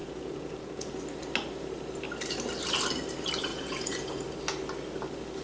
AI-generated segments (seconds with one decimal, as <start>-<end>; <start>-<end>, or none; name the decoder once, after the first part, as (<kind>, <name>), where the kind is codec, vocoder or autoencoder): 0.0-1.0 (vocoder, Vocos); 3.5-4.2